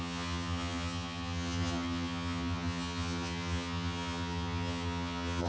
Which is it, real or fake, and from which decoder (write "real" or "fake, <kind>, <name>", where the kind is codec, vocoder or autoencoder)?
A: fake, vocoder, HiFi-GAN